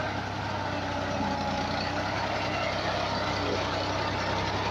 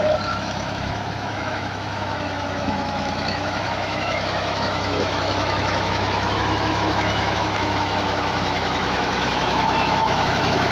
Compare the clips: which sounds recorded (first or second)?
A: first